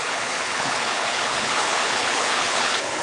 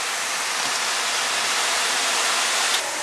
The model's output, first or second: first